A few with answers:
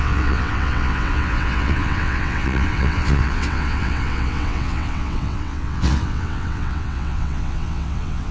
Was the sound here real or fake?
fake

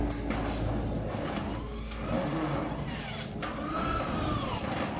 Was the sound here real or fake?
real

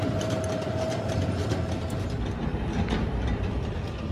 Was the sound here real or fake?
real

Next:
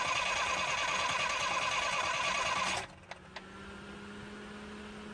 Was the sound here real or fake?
real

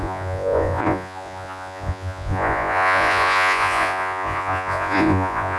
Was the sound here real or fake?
fake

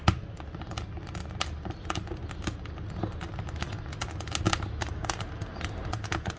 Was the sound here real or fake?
real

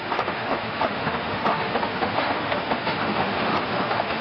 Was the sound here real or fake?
fake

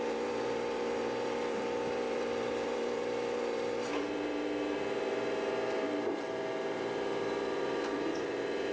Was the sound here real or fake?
fake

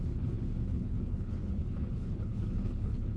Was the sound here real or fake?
fake